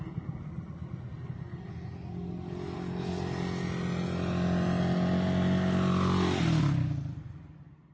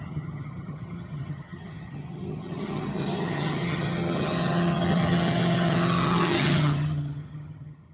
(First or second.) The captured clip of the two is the first